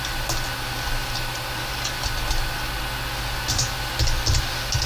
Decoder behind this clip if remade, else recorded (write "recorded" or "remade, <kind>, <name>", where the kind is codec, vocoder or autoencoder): recorded